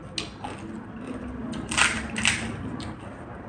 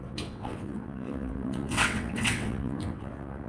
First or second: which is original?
first